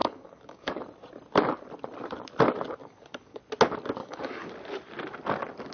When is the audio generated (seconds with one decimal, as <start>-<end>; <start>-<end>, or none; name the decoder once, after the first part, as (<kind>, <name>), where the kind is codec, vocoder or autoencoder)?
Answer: 0.0-0.8 (codec, DAC); 2.8-3.4; 4.0-4.5